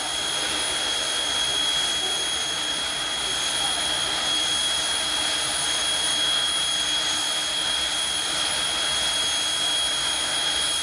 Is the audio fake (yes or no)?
no